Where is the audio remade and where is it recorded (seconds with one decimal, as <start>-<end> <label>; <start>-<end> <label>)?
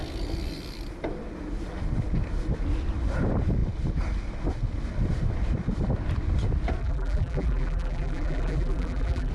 0.0-6.8 recorded; 6.8-9.3 remade